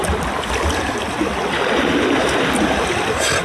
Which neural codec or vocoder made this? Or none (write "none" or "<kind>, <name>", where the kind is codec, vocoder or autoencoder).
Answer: none